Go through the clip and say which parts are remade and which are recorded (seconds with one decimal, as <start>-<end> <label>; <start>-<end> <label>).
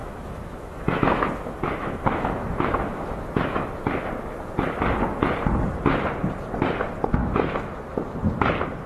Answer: 0.0-3.7 remade; 3.7-7.2 recorded; 7.2-7.8 remade; 7.8-8.9 recorded